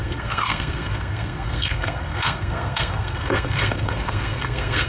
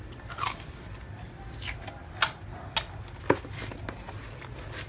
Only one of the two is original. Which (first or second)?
second